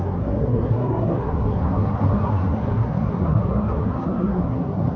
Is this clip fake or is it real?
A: fake